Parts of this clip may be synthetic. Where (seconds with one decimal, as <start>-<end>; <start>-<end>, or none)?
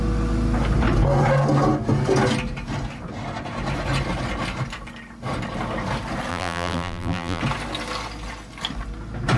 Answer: 6.3-7.4